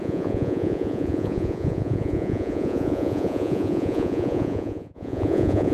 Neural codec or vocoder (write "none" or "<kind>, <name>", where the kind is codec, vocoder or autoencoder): vocoder, Vocos